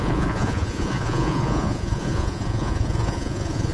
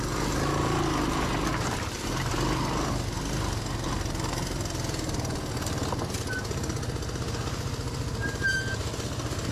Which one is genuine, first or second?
second